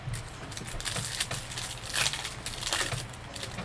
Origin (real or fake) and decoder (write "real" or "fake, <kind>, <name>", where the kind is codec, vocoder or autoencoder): real